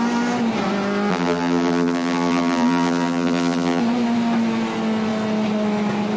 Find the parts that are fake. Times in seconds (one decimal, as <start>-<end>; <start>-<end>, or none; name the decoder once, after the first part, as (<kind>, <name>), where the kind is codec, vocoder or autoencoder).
1.1-3.8 (vocoder, BigVGAN v2)

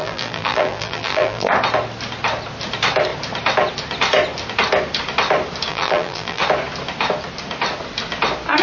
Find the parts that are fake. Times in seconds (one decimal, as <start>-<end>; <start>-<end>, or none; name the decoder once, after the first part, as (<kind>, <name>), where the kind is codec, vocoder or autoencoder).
0.0-1.5 (vocoder, BigVGAN v2); 5.7-6.4